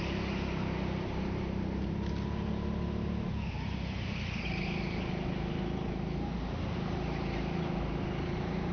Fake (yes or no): no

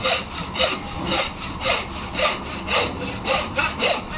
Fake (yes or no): yes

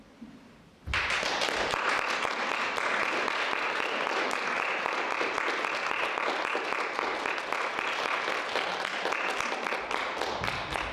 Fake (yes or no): no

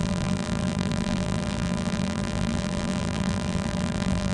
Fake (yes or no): yes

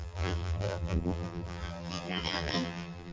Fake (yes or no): yes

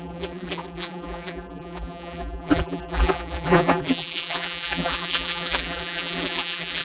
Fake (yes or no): yes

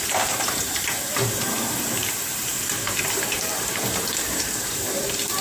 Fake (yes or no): yes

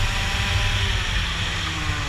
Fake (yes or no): no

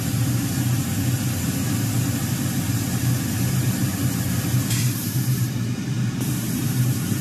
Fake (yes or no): yes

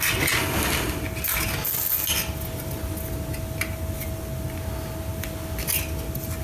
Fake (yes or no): no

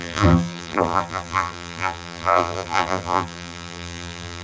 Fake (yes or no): yes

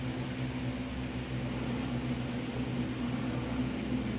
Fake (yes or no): no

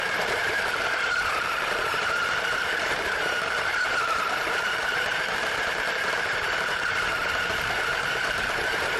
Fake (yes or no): yes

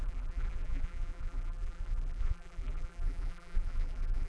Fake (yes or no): yes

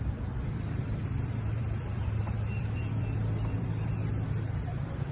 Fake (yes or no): yes